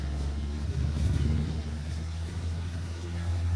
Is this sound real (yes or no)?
no